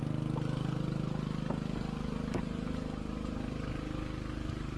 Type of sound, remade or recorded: recorded